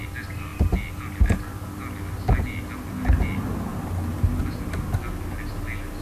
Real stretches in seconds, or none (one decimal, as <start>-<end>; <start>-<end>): 0.0-6.0